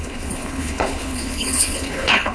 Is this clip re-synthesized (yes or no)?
yes